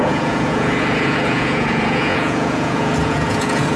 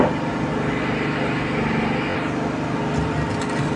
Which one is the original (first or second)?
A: second